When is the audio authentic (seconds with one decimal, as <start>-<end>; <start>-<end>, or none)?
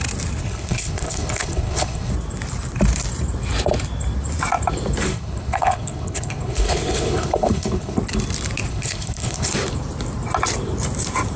0.0-0.4; 2.1-5.1; 8.0-8.7; 9.5-11.4